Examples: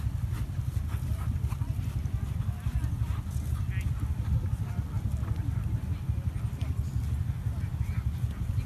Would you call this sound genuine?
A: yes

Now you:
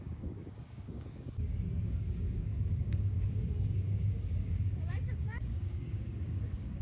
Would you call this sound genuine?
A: no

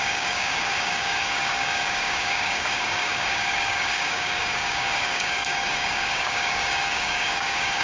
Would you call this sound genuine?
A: no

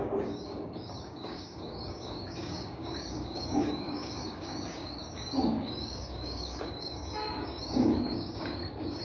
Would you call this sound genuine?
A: no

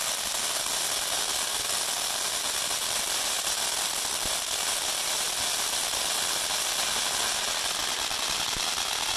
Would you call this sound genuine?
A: yes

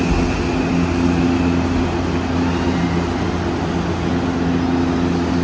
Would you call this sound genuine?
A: yes